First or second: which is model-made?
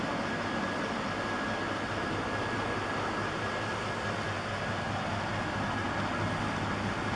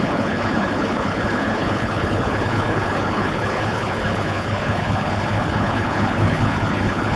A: second